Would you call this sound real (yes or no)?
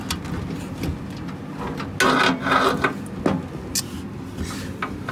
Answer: yes